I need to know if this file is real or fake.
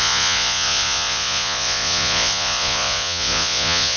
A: fake